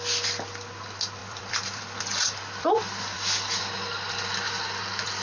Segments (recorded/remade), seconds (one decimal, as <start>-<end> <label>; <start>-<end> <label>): 0.0-1.2 recorded; 1.2-4.3 remade; 4.3-5.2 recorded